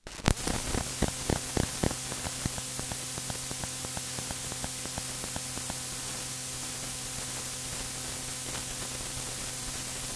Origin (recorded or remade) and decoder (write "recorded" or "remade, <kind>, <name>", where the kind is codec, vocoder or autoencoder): recorded